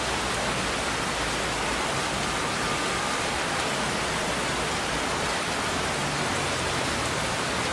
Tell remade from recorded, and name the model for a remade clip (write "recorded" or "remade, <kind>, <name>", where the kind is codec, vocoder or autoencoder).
recorded